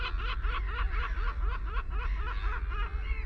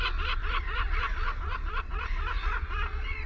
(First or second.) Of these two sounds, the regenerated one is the second